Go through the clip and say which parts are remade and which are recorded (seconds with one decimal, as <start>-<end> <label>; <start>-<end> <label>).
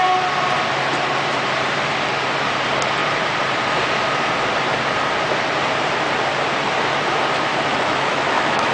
0.0-7.7 recorded; 7.7-8.7 remade